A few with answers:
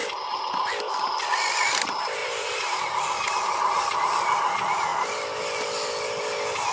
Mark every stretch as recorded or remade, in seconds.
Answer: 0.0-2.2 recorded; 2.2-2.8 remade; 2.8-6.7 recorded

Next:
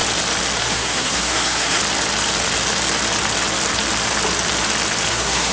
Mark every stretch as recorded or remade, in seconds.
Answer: 0.0-0.6 recorded; 0.6-1.8 remade; 1.8-5.1 recorded; 5.1-5.5 remade

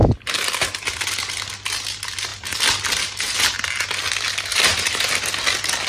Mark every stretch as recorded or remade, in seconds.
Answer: 0.0-4.5 recorded; 4.5-5.1 remade; 5.1-5.9 recorded

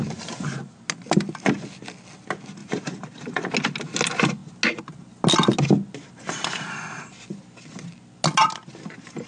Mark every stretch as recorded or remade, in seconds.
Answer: 0.0-2.6 recorded; 2.6-3.5 remade; 3.5-9.3 recorded

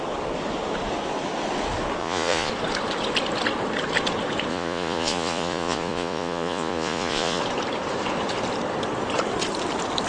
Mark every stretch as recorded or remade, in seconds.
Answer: 0.0-2.0 recorded; 2.0-2.5 remade; 2.5-4.5 recorded; 4.5-7.4 remade; 7.4-10.1 recorded

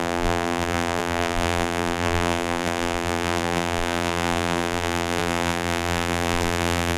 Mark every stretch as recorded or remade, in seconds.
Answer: 0.0-7.0 remade